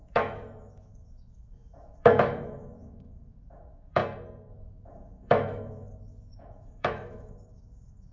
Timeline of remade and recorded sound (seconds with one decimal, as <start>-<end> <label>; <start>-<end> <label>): 0.0-4.0 remade; 4.0-4.5 recorded; 4.5-8.1 remade

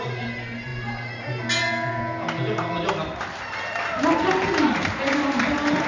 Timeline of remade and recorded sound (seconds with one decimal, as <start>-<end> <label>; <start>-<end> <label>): 0.0-5.9 recorded

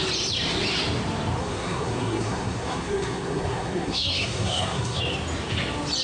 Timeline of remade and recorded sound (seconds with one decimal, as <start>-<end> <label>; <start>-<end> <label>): 0.0-1.4 recorded; 1.4-5.0 remade; 5.0-6.0 recorded